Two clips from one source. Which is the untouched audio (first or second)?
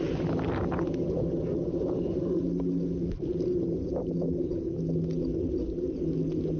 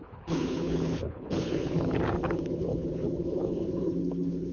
first